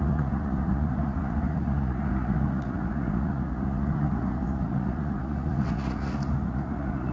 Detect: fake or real fake